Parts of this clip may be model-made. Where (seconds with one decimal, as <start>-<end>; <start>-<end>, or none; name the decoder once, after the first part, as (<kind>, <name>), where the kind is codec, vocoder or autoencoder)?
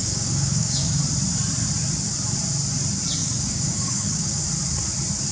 0.0-1.0 (codec, DAC); 3.2-4.4